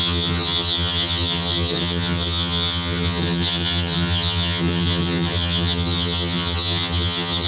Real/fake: fake